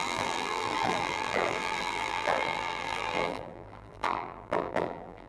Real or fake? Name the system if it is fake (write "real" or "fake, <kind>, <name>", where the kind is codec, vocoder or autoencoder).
fake, vocoder, BigVGAN v2